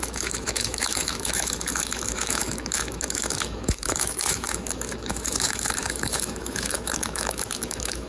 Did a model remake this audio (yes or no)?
yes